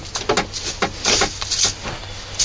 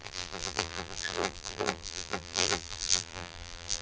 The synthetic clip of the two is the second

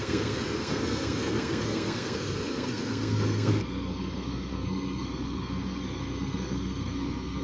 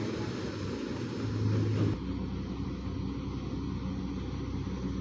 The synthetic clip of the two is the first